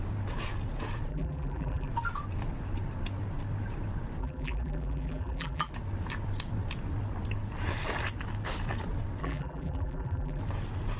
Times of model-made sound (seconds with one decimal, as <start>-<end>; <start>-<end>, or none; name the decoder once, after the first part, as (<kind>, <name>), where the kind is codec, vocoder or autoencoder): 1.1-1.9 (vocoder, BigVGAN v2); 4.2-5.7; 9.2-10.4